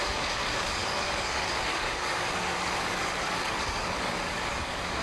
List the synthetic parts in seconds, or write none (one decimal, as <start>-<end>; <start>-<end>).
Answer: 0.0-5.0